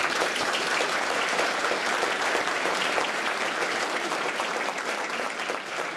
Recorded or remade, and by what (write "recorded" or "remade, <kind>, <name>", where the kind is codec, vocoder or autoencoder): remade, vocoder, BigVGAN v2